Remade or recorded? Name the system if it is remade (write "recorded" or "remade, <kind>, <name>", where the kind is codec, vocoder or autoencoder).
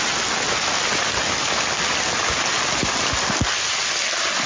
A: recorded